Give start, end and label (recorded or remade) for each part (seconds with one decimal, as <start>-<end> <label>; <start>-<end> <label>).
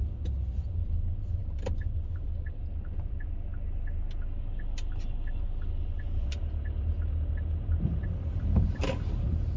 0.0-9.6 recorded